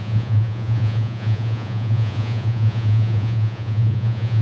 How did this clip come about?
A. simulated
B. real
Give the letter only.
A